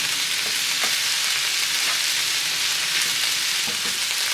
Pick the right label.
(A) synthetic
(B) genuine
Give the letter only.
B